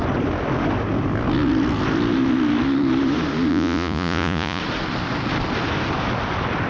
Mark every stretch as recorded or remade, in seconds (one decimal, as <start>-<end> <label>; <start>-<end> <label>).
0.0-3.5 recorded; 3.5-4.6 remade; 4.6-6.7 recorded